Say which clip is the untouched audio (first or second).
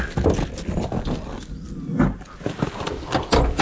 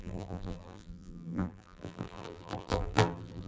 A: first